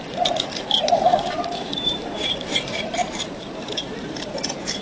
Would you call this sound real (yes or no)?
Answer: no